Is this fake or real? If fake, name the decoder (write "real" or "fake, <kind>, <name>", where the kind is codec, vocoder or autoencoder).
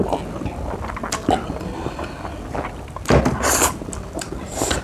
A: real